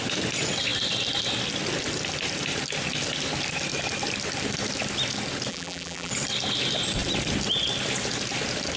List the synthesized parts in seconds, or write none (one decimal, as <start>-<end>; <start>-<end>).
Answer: 5.5-6.1